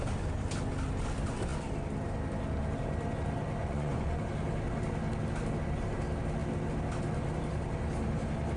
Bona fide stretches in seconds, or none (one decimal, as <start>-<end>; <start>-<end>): 0.0-3.6; 4.2-8.6